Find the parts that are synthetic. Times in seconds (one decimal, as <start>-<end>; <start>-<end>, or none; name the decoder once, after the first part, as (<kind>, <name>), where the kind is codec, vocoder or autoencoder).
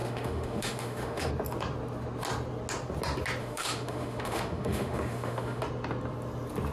0.0-1.3 (autoencoder, DAC-VAE); 3.4-5.6